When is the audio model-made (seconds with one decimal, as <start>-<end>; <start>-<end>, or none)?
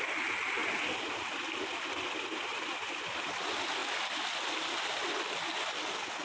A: none